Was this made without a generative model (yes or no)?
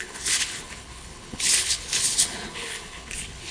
no